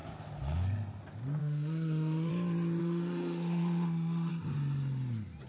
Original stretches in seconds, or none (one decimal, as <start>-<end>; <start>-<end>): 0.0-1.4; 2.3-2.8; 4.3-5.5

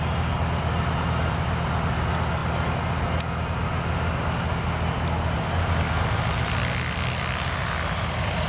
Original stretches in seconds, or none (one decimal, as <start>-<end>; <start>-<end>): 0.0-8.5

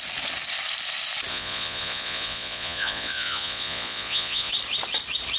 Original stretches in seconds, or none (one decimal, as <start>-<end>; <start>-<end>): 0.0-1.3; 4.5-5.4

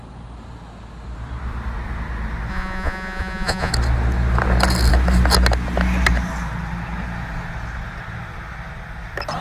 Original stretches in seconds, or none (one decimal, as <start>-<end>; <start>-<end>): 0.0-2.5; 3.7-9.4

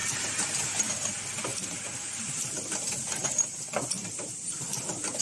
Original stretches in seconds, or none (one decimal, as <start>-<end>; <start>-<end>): 0.9-1.5; 4.6-5.2

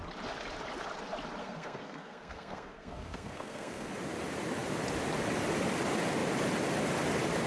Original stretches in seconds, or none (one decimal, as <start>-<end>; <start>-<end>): 0.0-1.4; 3.9-7.5